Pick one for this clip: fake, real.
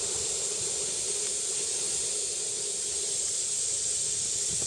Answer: real